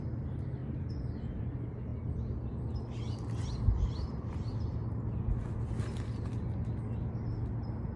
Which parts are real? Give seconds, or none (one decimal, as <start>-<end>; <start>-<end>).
0.0-8.0